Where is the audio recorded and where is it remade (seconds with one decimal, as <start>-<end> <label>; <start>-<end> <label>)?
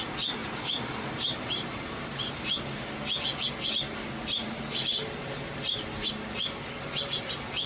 0.0-0.4 recorded; 0.4-2.9 remade; 2.9-4.4 recorded; 4.4-6.1 remade; 6.1-7.7 recorded